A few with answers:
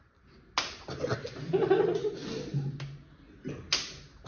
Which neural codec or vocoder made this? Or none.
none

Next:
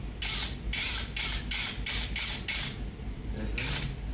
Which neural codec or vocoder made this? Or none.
none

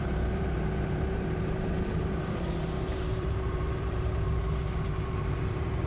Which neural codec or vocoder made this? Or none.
vocoder, BigVGAN v2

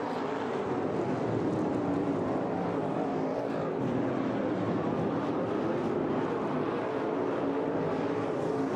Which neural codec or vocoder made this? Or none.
none